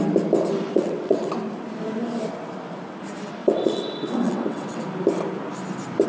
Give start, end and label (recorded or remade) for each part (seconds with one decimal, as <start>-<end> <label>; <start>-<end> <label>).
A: 0.0-0.7 recorded; 0.7-1.3 remade; 1.3-3.4 recorded; 3.4-4.8 remade; 4.8-6.1 recorded